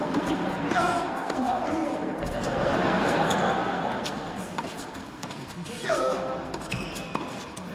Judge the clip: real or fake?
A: fake